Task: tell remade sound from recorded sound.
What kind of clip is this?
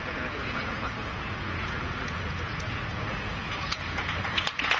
remade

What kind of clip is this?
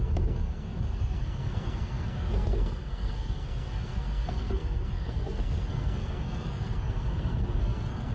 remade